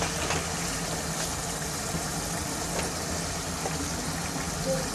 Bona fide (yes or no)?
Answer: yes